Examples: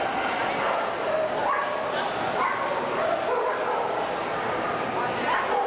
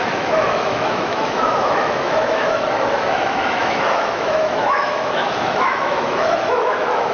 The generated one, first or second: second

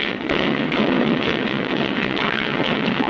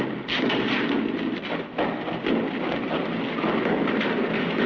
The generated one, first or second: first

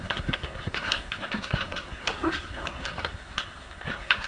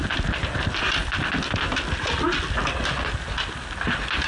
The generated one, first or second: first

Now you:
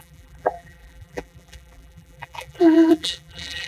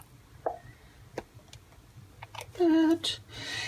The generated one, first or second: first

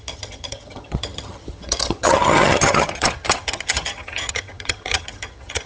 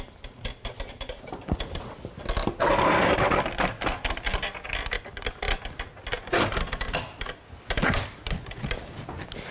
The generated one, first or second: first